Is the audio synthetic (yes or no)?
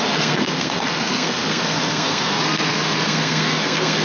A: yes